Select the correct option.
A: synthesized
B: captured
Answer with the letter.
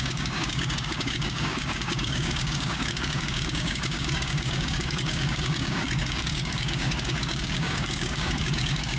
A